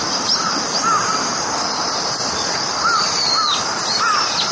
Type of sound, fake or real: real